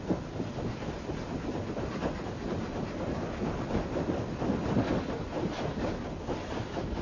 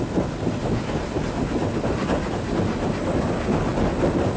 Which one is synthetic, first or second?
first